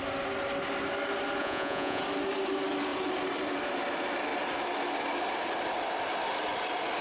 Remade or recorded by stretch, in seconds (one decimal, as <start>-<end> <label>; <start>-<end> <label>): 0.0-1.4 recorded; 1.4-2.0 remade; 2.0-7.0 recorded